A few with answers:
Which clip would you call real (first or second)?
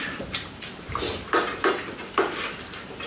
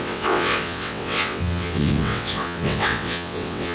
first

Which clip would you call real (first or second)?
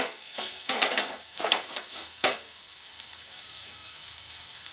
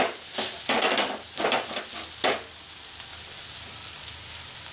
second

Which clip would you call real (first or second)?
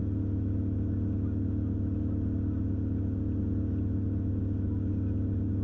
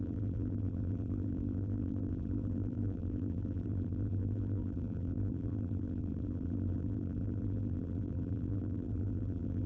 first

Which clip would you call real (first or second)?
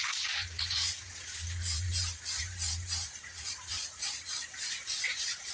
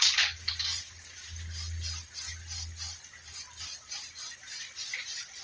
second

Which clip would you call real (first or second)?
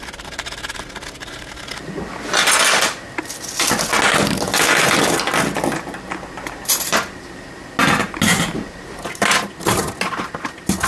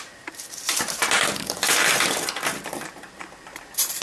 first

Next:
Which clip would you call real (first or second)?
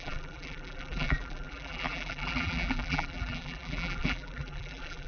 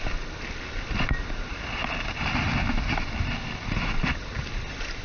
second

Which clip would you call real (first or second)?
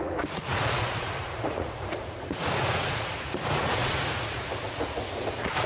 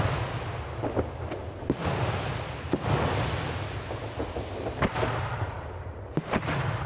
second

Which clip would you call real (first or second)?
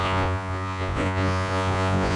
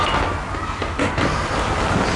second